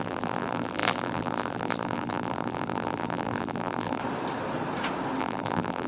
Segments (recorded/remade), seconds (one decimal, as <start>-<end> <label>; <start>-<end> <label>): 0.0-4.0 remade; 4.0-5.2 recorded; 5.2-5.9 remade